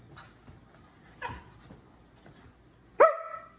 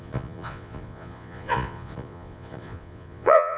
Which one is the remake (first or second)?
second